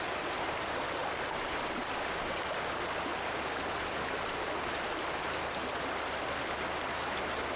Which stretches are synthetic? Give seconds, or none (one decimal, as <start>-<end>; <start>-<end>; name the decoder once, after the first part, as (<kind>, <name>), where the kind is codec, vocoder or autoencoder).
none